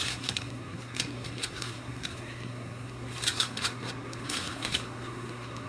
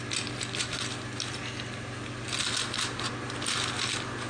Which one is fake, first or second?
first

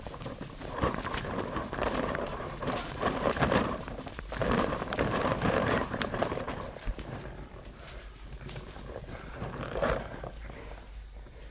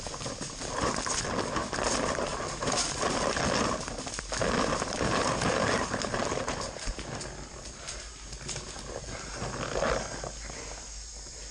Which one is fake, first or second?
first